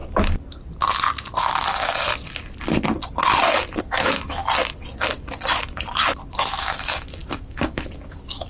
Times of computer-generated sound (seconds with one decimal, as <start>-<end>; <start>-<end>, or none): 3.8-4.4; 6.3-8.5